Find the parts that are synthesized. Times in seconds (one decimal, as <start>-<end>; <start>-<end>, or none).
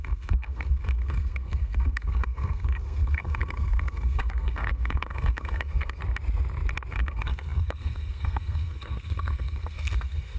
0.0-6.0; 6.9-10.4